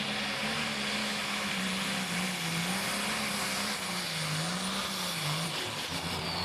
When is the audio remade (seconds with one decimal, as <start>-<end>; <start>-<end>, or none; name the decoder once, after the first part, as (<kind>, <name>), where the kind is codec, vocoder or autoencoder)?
1.0-1.5 (autoencoder, DAC-VAE)